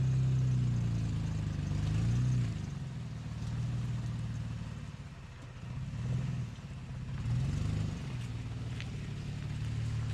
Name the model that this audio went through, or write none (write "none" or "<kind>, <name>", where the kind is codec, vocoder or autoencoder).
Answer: none